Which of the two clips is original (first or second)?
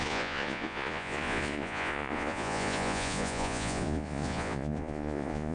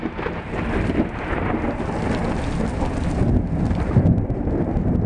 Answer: second